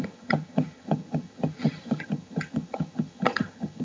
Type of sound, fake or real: fake